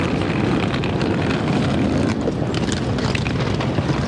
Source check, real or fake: real